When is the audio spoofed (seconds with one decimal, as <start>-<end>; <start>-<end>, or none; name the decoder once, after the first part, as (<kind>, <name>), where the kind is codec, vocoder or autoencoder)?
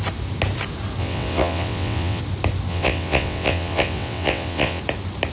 1.0-2.2 (vocoder, WaveNeXt); 2.7-4.8